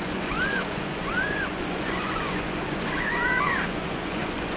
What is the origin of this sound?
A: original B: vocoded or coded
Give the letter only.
B